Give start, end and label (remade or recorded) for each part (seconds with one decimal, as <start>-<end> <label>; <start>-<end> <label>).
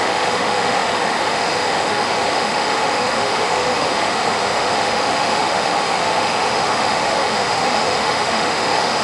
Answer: 0.0-9.0 remade